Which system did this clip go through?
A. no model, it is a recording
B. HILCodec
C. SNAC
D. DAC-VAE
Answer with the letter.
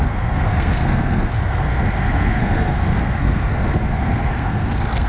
C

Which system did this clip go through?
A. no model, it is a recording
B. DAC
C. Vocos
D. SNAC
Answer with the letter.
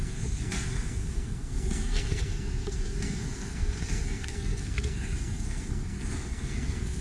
D